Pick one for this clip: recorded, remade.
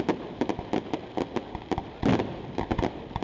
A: recorded